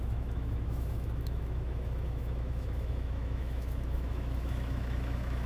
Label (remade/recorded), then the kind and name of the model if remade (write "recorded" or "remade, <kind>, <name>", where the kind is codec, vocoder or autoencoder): remade, autoencoder, DAC-VAE